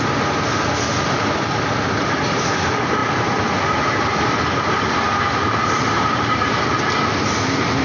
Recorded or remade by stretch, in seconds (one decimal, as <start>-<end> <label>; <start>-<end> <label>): 0.0-3.0 recorded; 3.0-6.6 remade; 6.6-7.8 recorded